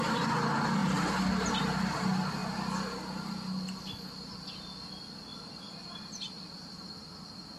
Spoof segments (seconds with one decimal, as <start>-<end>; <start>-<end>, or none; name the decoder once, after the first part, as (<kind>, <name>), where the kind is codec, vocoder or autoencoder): 2.4-4.4 (vocoder, BigVGAN v2); 5.3-6.7